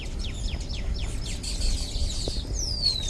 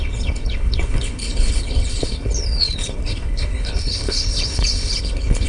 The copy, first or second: second